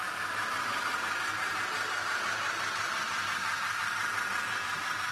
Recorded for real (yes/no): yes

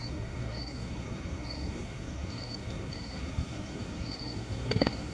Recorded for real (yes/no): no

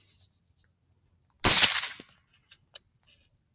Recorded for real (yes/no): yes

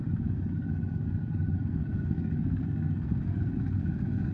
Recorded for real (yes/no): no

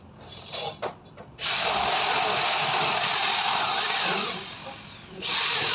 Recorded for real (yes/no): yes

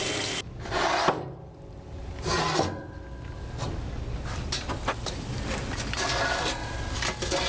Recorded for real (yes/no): yes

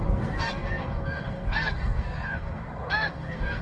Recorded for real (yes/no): no